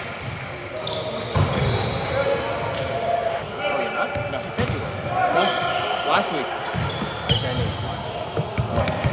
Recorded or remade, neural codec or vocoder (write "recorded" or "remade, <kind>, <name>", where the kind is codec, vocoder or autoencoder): recorded